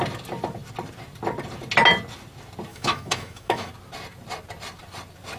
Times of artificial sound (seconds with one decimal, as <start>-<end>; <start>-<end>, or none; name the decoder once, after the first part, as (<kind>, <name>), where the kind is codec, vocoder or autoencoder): 2.7-3.7 (autoencoder, DAC-VAE)